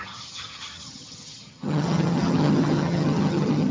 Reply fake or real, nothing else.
fake